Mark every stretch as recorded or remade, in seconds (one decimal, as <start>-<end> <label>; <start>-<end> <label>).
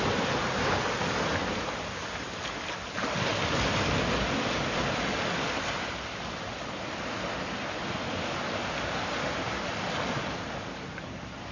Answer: 0.0-11.5 recorded